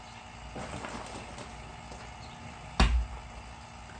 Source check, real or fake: real